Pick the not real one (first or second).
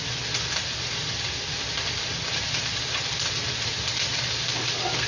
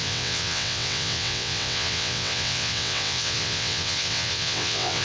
second